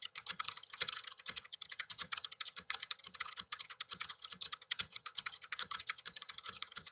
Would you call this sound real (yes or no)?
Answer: no